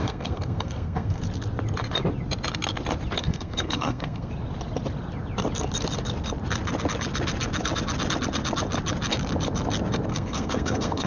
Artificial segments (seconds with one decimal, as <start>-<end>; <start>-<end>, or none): 0.0-1.2; 3.2-4.3; 10.1-11.1